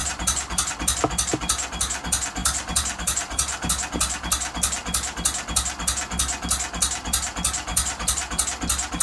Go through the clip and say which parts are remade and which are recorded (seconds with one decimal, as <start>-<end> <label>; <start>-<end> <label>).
0.0-0.7 remade; 0.7-2.4 recorded; 2.4-3.7 remade; 3.7-7.7 recorded; 7.7-8.4 remade; 8.4-9.0 recorded